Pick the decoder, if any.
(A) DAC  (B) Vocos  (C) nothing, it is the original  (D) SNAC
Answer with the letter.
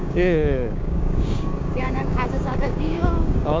A